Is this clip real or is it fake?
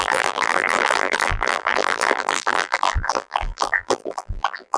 fake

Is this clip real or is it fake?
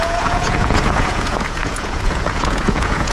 fake